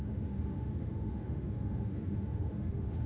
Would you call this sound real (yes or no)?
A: no